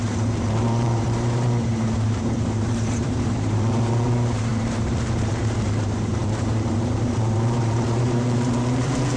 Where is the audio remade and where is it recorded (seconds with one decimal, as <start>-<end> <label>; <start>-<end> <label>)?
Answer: 0.0-9.2 remade